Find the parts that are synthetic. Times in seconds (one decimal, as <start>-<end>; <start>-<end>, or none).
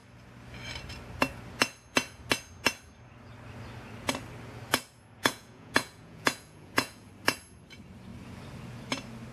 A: 5.2-7.1